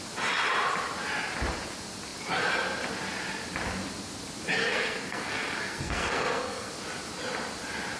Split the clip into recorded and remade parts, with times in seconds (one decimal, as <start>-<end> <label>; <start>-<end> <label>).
0.0-4.6 recorded; 4.6-6.7 remade; 6.7-8.0 recorded